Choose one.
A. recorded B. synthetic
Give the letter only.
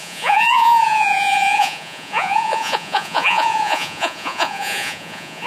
B